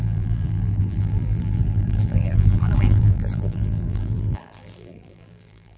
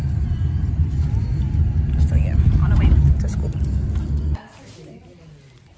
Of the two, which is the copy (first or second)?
first